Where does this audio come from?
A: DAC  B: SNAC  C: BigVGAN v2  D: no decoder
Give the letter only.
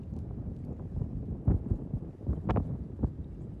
D